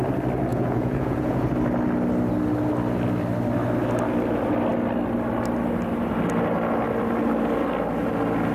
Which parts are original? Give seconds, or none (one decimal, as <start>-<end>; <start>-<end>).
0.0-0.5; 1.5-8.5